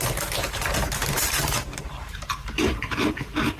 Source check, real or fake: fake